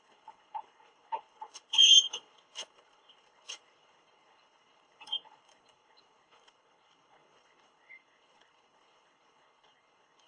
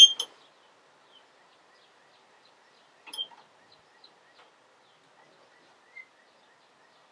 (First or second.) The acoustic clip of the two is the second